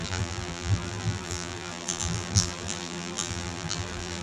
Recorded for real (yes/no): no